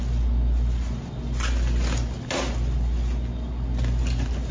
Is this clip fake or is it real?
real